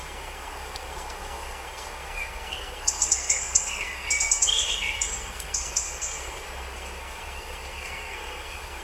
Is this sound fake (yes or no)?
yes